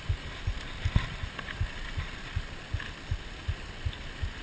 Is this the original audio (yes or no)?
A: yes